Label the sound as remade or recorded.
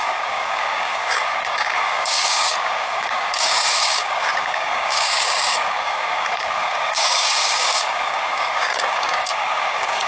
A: remade